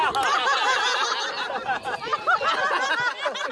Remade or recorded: recorded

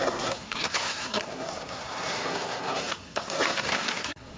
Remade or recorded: remade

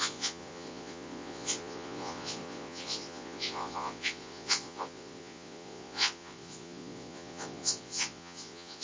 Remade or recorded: remade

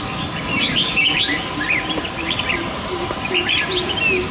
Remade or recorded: recorded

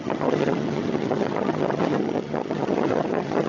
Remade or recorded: remade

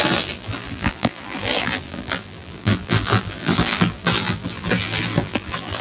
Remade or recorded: remade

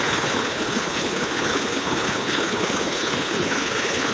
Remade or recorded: remade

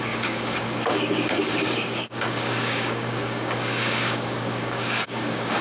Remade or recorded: remade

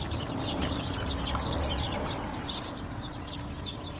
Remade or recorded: remade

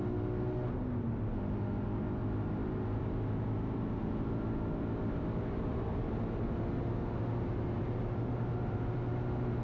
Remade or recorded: recorded